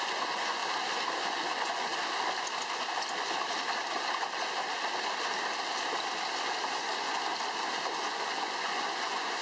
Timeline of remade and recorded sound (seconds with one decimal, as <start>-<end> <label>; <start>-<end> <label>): 0.0-0.6 remade; 0.6-1.2 recorded; 1.2-1.9 remade; 1.9-6.7 recorded; 6.7-7.3 remade; 7.3-7.9 recorded; 7.9-9.4 remade